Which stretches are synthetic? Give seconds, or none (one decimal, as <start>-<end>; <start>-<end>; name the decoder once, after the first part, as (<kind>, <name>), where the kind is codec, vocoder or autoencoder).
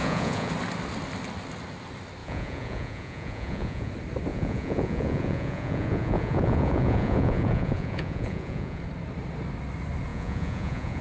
0.0-0.5 (vocoder, Vocos); 2.2-3.9; 4.3-8.8; 10.1-11.0